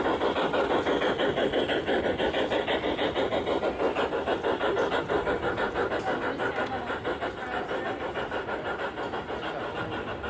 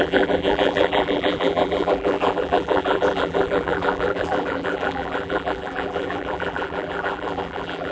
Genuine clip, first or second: first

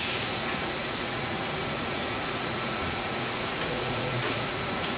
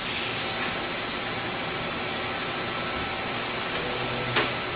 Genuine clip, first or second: second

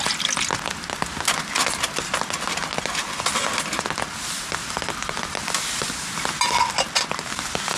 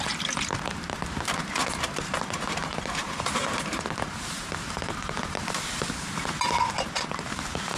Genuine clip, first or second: first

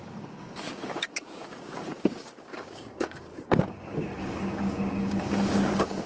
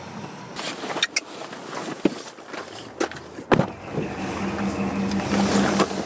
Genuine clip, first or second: second